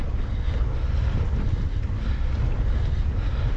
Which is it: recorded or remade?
recorded